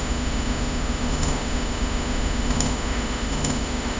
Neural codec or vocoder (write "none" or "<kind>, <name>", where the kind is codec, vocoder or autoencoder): autoencoder, DAC-VAE